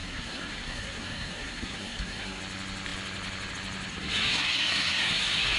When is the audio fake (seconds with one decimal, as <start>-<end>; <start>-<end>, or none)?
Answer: 0.0-2.4; 3.9-5.6